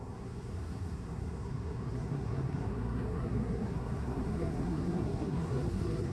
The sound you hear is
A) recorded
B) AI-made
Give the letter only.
B